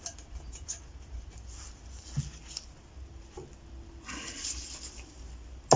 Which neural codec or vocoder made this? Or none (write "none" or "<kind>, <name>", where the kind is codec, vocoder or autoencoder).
none